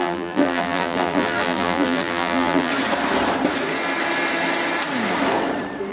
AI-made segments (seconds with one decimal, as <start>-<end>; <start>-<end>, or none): 0.0-2.7